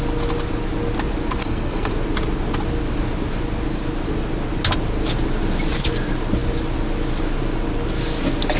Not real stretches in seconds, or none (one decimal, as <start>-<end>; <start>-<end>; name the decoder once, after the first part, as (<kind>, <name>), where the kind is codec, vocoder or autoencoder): 1.4-1.9 (codec, SNAC)